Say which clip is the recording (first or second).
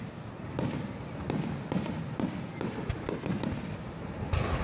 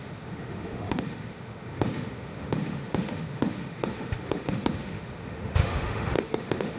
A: first